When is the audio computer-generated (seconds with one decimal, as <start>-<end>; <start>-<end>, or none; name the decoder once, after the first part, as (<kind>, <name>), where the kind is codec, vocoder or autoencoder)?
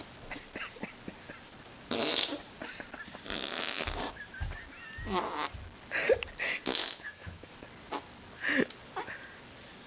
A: 6.8-7.5 (autoencoder, DAC-VAE)